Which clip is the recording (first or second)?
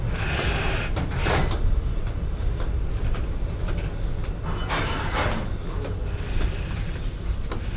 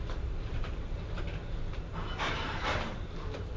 first